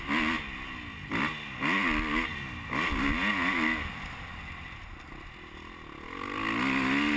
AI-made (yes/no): no